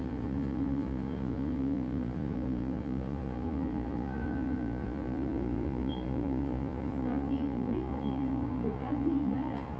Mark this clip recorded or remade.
remade